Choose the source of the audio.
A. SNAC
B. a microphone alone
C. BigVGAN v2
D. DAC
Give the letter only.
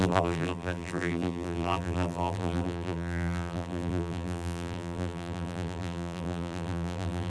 C